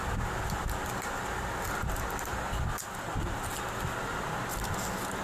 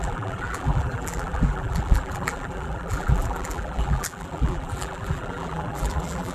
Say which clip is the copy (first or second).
second